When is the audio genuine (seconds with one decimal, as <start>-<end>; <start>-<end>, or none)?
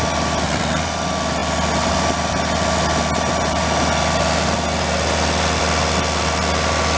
0.0-7.0